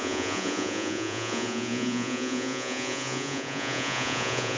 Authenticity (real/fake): fake